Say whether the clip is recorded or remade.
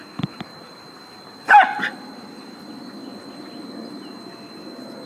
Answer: recorded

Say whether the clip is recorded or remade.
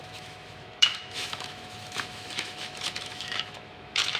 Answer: remade